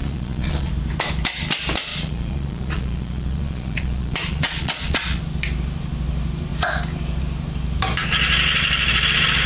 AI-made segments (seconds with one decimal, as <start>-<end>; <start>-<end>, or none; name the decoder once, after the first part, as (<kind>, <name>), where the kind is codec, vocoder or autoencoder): 0.0-0.7 (vocoder, Vocos); 1.9-5.2